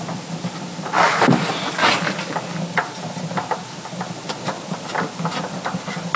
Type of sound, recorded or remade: recorded